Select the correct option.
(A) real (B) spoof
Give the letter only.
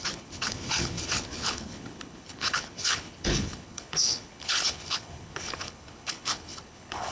B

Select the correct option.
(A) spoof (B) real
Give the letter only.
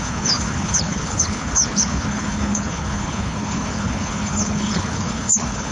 A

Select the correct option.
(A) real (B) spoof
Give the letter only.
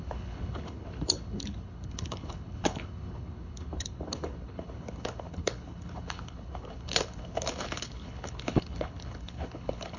B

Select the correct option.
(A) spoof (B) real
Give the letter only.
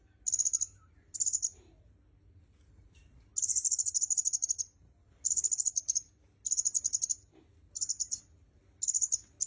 B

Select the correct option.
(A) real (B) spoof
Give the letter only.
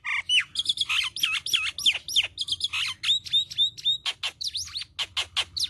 A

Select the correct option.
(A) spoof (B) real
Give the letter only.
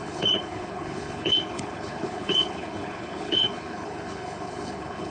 A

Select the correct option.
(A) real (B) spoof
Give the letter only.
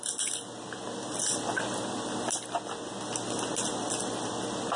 A